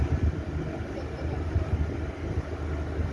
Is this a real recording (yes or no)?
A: yes